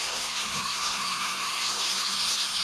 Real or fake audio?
fake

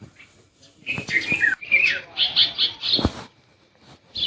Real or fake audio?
real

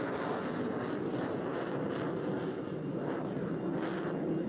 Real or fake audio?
real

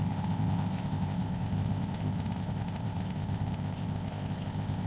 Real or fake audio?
fake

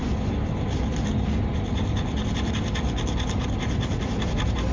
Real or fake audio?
real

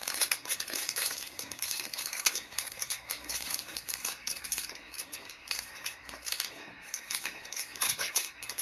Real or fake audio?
fake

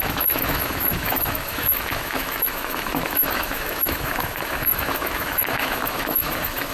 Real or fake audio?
fake